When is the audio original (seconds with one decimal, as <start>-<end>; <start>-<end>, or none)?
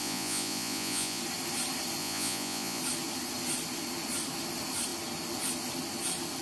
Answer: 1.2-2.0; 2.8-6.4